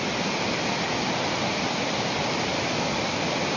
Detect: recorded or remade recorded